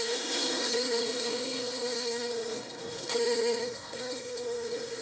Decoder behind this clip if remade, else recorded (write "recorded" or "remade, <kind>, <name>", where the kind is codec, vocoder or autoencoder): remade, codec, SNAC